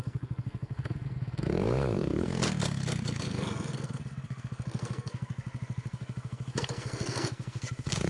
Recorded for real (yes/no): no